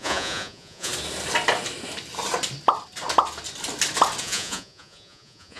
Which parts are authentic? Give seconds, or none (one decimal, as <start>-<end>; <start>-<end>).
0.9-4.2